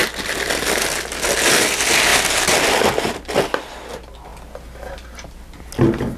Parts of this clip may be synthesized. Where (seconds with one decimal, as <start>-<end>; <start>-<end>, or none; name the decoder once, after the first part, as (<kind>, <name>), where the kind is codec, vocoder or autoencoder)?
none